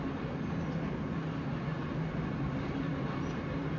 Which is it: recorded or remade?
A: recorded